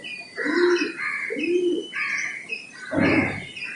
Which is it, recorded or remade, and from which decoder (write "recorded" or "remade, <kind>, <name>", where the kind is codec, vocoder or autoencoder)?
recorded